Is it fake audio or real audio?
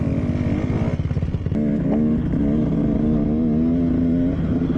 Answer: real